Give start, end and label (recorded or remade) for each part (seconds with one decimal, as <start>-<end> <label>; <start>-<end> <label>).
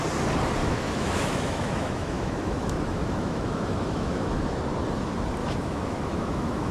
0.0-0.6 recorded; 0.6-4.6 remade; 4.6-5.4 recorded; 5.4-6.7 remade